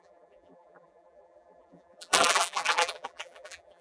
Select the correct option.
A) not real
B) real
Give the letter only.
A